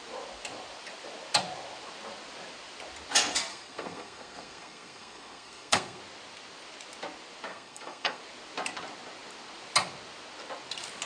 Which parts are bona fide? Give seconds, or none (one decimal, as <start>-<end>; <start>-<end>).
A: 0.0-3.5; 6.0-7.5; 8.2-11.1